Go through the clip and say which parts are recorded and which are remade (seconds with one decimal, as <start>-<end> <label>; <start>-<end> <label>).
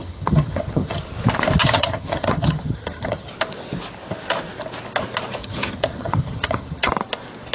0.0-1.0 remade; 1.0-1.6 recorded; 1.6-3.3 remade; 3.3-5.4 recorded; 5.4-6.9 remade; 6.9-7.5 recorded